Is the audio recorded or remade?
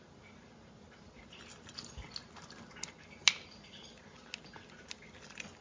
recorded